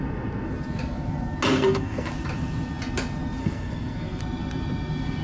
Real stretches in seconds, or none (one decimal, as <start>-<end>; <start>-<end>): 0.0-1.5; 2.1-3.4; 4.2-5.2